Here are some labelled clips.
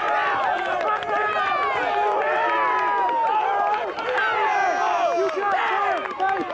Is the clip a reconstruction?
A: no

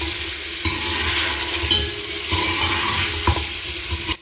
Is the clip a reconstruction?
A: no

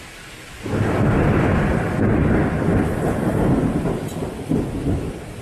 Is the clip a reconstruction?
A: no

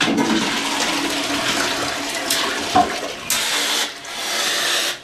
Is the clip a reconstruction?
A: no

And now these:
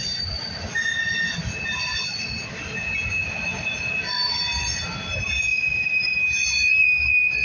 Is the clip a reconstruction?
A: no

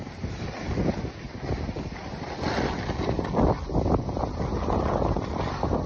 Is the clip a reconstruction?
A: no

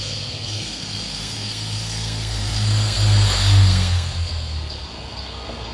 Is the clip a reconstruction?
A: yes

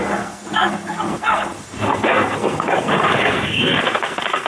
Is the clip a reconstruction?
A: yes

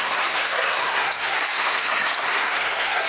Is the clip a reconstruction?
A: yes